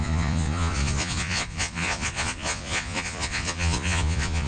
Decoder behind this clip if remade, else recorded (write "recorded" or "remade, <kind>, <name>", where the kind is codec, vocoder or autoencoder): remade, vocoder, Vocos